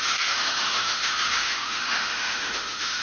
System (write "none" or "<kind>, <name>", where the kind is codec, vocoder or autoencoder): autoencoder, DAC-VAE